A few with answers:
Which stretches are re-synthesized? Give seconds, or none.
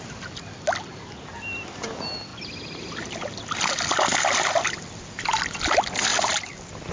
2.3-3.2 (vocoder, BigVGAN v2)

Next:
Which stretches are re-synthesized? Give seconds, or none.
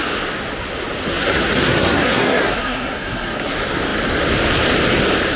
1.1-3.5 (codec, SNAC)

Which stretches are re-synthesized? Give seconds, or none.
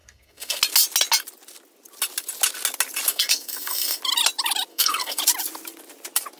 0.0-0.6 (codec, SNAC); 3.1-4.0; 4.7-5.2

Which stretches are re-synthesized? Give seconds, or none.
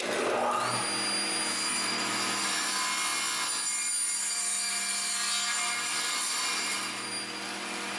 none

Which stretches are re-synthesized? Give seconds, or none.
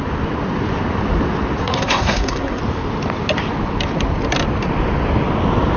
1.6-2.6 (codec, SNAC)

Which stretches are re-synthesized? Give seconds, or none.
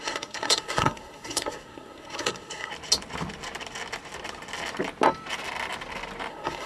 0.0-2.7 (codec, SNAC); 6.3-6.7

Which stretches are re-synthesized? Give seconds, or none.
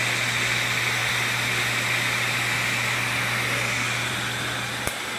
none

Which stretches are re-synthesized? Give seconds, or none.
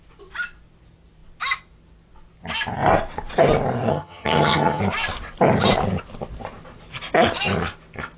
3.9-4.8 (vocoder, HiFi-GAN)